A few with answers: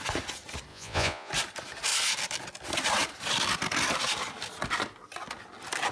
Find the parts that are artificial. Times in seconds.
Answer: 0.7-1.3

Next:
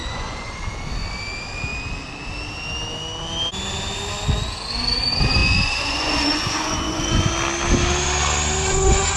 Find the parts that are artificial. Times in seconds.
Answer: 0.0-0.6; 5.4-7.3

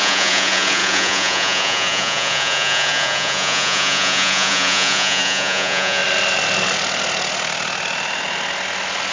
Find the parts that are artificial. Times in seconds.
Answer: 0.0-6.0

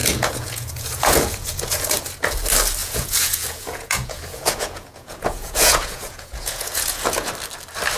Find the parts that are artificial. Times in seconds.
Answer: 0.0-1.9; 2.8-7.3

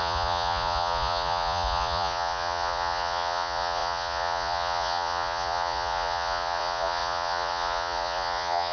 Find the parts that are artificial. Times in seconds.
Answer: 0.0-8.7

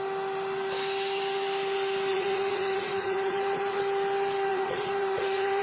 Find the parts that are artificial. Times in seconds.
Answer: 2.1-3.8; 4.5-5.6